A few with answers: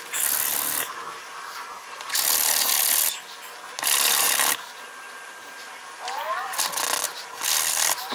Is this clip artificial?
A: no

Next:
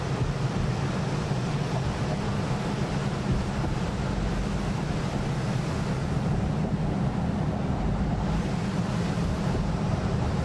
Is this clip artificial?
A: no